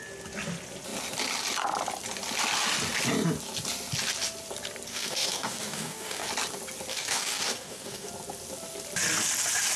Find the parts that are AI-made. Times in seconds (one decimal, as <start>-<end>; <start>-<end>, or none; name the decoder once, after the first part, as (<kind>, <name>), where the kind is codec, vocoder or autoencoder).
4.9-6.3 (codec, DAC); 6.9-8.1